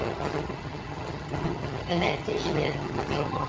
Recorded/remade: remade